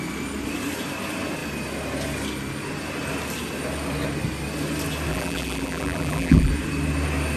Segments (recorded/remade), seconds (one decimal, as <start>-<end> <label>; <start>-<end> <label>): 0.0-5.1 recorded; 5.1-6.5 remade; 6.5-7.4 recorded